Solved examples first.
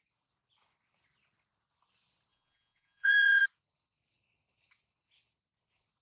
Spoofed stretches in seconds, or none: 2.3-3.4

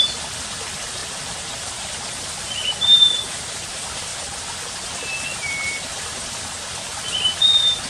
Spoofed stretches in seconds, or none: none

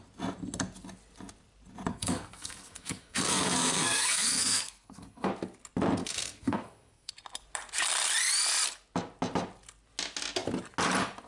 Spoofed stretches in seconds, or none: 1.9-5.3; 6.0-7.1